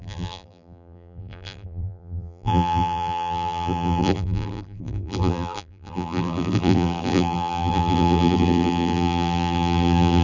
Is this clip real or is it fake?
fake